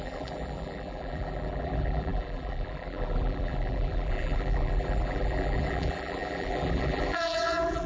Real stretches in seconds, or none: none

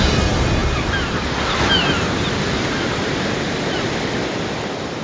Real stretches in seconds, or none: 0.0-5.0

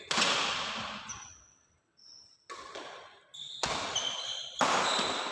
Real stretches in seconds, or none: 0.0-5.3

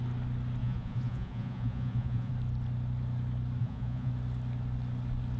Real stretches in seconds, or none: 0.0-0.6; 2.3-3.6; 4.1-5.4

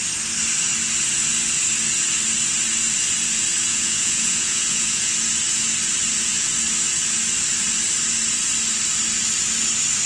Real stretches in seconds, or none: 0.0-3.7; 5.1-10.1

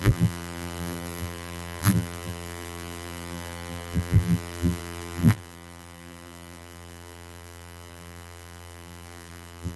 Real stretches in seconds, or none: none